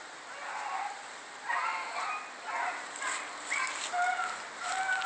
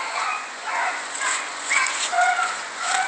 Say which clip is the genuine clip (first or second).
first